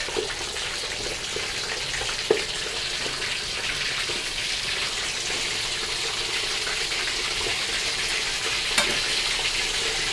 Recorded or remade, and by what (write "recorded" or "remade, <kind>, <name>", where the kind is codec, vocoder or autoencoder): recorded